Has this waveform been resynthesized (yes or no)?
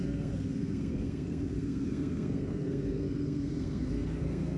yes